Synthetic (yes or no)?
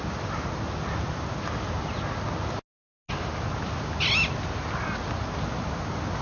no